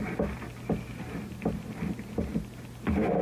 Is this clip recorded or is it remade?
recorded